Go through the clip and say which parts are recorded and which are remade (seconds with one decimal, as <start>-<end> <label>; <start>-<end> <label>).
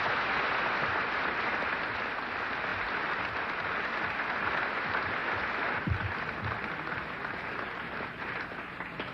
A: 0.0-9.1 recorded